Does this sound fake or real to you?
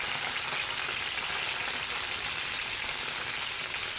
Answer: real